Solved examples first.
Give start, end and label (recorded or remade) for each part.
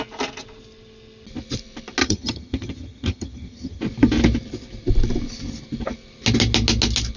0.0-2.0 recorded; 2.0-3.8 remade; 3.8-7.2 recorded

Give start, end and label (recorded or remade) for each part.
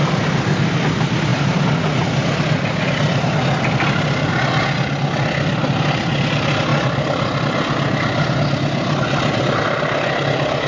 0.0-10.7 recorded